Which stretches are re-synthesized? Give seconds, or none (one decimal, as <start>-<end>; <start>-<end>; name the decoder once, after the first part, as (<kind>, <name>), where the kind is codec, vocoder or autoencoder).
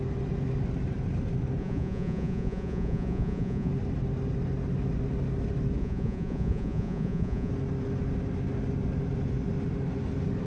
1.6-3.7 (vocoder, Vocos); 5.8-7.5